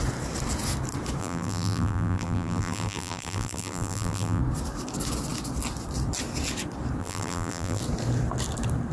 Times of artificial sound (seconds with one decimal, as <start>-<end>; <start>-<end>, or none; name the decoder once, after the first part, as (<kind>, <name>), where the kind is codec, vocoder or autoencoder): 1.2-4.4 (vocoder, BigVGAN v2); 7.0-7.8